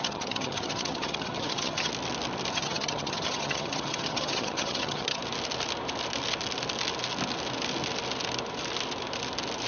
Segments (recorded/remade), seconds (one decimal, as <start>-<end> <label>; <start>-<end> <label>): 0.0-1.9 remade; 1.9-2.5 recorded; 2.5-5.2 remade; 5.2-9.7 recorded